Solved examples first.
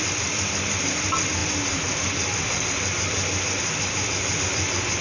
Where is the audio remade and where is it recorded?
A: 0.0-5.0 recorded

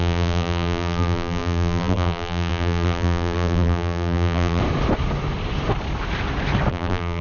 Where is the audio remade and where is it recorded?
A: 0.0-4.6 remade; 4.6-6.7 recorded; 6.7-7.2 remade

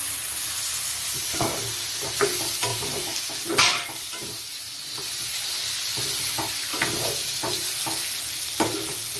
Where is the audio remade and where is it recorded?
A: 0.0-1.2 recorded; 1.2-1.9 remade; 1.9-2.7 recorded; 2.7-5.1 remade; 5.1-6.7 recorded; 6.7-7.4 remade; 7.4-9.2 recorded

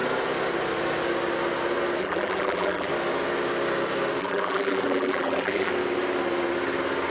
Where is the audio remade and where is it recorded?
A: 0.0-2.0 recorded; 2.0-2.9 remade; 2.9-4.2 recorded; 4.2-5.7 remade; 5.7-7.1 recorded